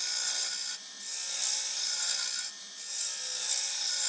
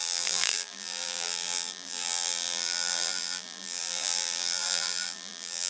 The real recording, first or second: first